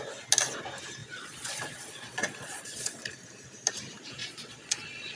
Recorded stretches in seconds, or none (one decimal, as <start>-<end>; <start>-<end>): 0.0-1.0; 3.0-4.2